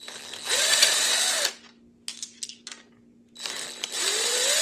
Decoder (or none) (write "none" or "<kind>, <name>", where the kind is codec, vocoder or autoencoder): none